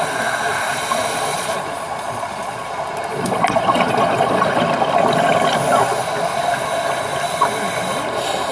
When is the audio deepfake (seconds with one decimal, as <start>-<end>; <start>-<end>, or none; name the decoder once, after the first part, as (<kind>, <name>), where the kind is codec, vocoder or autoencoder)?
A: 1.3-2.7 (vocoder, Vocos); 3.1-4.6